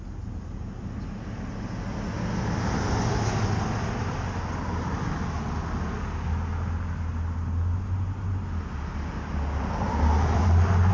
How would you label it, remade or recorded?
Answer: recorded